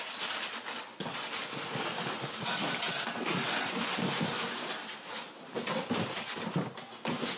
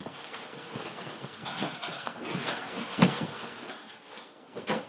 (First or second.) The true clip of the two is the first